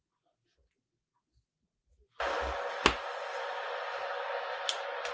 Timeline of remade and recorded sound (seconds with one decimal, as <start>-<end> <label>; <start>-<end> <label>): 0.0-5.1 recorded